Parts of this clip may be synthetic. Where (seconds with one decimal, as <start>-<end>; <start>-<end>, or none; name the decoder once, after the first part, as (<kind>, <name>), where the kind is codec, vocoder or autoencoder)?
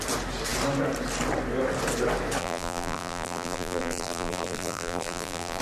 2.4-5.6 (vocoder, BigVGAN v2)